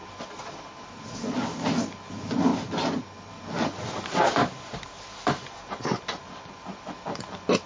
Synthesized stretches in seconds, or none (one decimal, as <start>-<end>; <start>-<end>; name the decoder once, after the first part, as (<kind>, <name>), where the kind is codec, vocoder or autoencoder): none